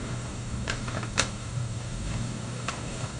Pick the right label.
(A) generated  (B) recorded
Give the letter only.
A